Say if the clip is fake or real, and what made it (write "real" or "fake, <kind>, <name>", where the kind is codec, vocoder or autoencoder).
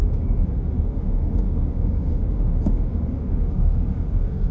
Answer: fake, autoencoder, DAC-VAE